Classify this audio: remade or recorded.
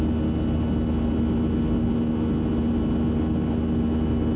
recorded